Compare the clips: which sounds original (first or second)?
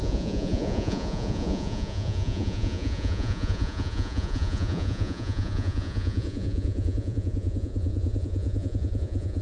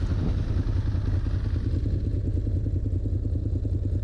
second